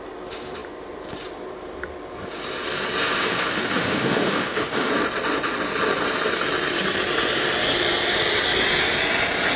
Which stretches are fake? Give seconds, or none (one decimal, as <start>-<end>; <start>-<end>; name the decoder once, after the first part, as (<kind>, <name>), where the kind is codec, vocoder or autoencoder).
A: 3.2-4.9 (autoencoder, DAC-VAE)